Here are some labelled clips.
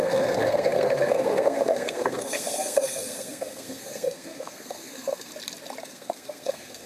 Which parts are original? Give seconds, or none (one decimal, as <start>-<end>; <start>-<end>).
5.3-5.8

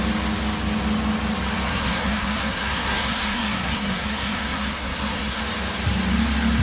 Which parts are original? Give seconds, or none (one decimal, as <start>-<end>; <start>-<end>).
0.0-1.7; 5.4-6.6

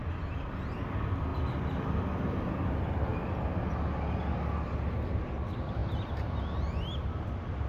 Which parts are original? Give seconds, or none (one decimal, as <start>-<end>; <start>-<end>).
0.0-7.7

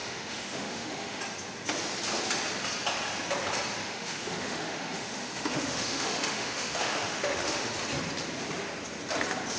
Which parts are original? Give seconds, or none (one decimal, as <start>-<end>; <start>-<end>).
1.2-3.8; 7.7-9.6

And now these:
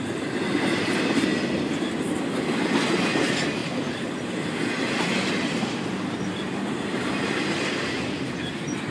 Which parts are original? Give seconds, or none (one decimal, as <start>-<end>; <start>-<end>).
0.0-6.9

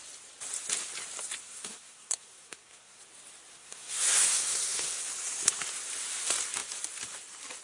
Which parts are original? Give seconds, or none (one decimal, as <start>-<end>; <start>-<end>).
0.0-1.4; 3.0-3.5; 5.1-7.6